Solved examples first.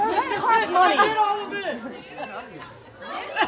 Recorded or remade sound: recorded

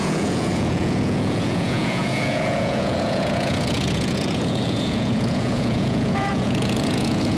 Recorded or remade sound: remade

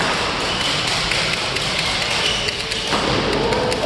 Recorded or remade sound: recorded